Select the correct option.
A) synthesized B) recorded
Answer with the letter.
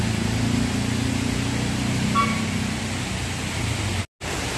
B